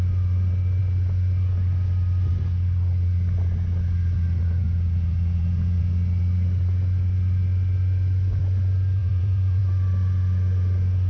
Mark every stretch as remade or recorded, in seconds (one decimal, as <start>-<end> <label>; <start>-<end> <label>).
0.0-4.6 recorded; 4.6-5.8 remade; 5.8-9.0 recorded; 9.0-9.6 remade; 9.6-11.1 recorded